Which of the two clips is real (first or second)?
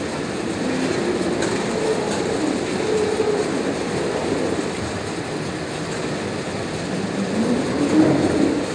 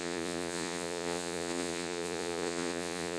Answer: first